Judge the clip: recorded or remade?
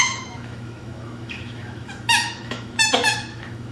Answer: remade